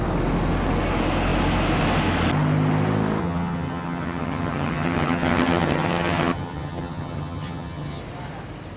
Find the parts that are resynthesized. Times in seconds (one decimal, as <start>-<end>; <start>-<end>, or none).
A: 3.2-8.0